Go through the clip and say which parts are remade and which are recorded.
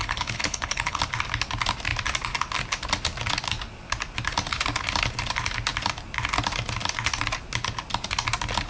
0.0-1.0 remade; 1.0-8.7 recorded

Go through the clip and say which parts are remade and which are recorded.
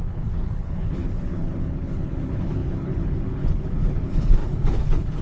0.0-5.2 remade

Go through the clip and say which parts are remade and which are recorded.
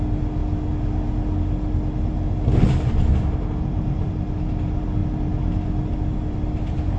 0.0-7.0 recorded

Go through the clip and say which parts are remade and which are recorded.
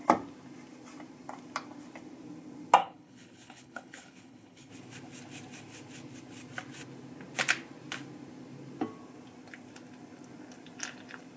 0.0-2.8 recorded; 2.8-4.7 remade; 4.7-11.4 recorded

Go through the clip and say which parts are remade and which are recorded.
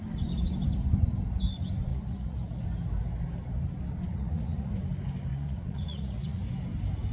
0.0-1.9 recorded; 1.9-2.6 remade; 2.6-4.1 recorded; 4.1-4.8 remade; 4.8-5.3 recorded; 5.3-6.4 remade; 6.4-7.1 recorded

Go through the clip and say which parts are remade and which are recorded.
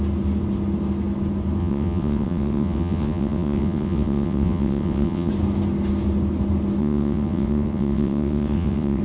0.0-1.6 recorded; 1.6-5.3 remade; 5.3-6.8 recorded; 6.8-9.0 remade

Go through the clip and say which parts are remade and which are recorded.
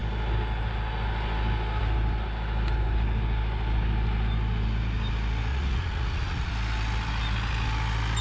0.0-5.5 recorded; 5.5-6.5 remade; 6.5-8.2 recorded